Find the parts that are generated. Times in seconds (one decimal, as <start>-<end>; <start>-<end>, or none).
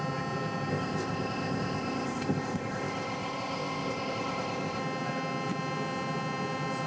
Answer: 0.7-4.8